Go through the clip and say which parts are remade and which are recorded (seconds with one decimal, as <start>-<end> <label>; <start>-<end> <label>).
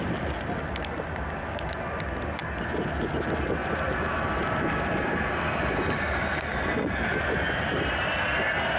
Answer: 0.0-3.6 recorded; 3.6-6.6 remade; 6.6-8.8 recorded